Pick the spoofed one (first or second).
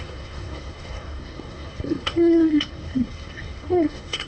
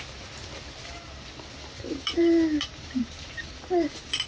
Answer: first